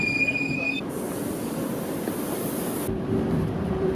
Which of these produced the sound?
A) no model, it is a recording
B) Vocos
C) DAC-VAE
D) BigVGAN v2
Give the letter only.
D